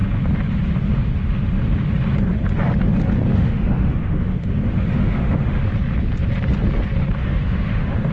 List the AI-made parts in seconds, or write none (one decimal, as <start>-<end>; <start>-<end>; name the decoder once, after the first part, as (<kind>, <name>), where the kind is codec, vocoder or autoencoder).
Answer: 3.3-5.6 (autoencoder, DAC-VAE); 7.2-8.1